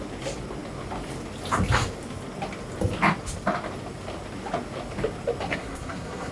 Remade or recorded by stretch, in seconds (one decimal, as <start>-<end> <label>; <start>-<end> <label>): 0.0-5.5 recorded; 5.5-6.3 remade